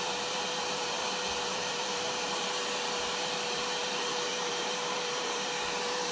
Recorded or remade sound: remade